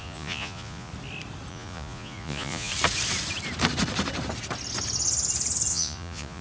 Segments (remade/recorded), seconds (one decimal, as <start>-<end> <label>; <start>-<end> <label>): 0.0-0.9 remade; 0.9-1.5 recorded; 1.5-2.7 remade; 2.7-5.7 recorded; 5.7-6.4 remade

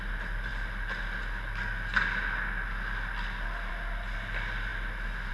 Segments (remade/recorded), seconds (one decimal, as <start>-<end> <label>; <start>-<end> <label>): 0.0-5.3 recorded

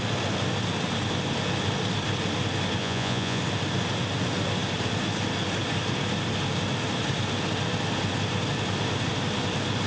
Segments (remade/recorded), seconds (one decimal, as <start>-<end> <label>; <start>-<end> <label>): 0.0-2.8 recorded; 2.8-3.4 remade; 3.4-9.9 recorded